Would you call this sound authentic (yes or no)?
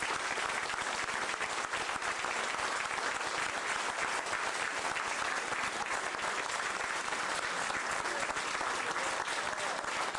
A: yes